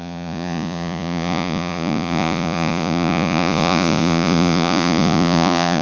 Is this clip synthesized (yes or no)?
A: yes